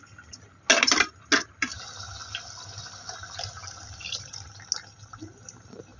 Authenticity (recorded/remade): recorded